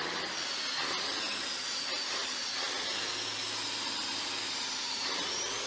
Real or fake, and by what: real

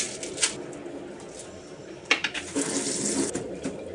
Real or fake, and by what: real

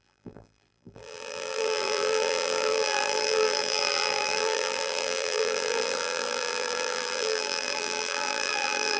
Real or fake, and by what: fake, vocoder, BigVGAN v2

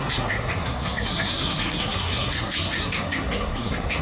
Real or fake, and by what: fake, codec, SNAC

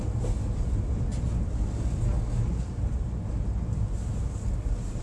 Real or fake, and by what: real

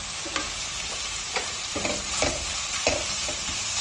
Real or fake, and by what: fake, vocoder, BigVGAN v2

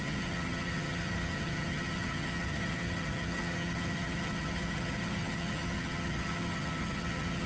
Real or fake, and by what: fake, vocoder, HiFi-GAN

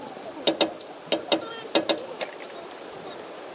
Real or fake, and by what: real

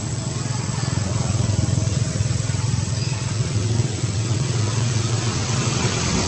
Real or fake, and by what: fake, vocoder, WaveNeXt